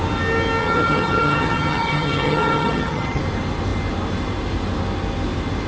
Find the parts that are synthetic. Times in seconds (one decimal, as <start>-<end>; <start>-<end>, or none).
0.6-3.2